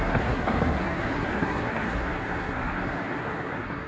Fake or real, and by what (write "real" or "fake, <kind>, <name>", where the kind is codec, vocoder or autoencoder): fake, codec, SNAC